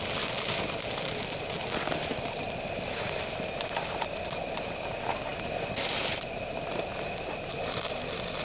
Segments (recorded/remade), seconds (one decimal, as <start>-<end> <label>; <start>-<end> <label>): 0.0-5.3 remade; 5.3-6.0 recorded; 6.0-8.4 remade